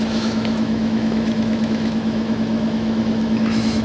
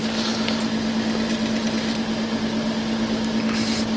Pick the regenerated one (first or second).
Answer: first